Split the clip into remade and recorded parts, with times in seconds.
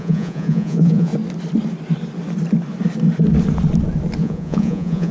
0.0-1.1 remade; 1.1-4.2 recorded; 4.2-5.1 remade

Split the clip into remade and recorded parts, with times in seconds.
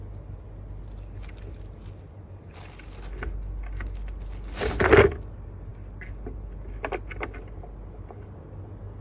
0.0-9.0 recorded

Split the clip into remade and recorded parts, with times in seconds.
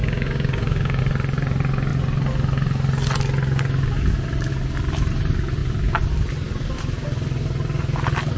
0.0-1.0 remade; 1.0-8.4 recorded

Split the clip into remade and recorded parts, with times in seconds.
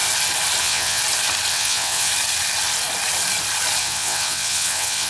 0.0-0.6 recorded; 0.6-1.0 remade; 1.0-1.5 recorded; 1.5-2.1 remade; 2.1-3.8 recorded; 3.8-5.1 remade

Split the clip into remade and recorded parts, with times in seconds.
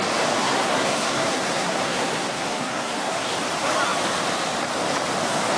0.0-0.4 recorded; 0.4-3.3 remade; 3.3-5.6 recorded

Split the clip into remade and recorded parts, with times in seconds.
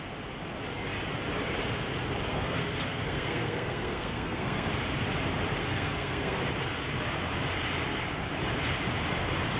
0.0-2.3 recorded; 2.3-4.7 remade; 4.7-5.6 recorded; 5.6-6.4 remade; 6.4-9.6 recorded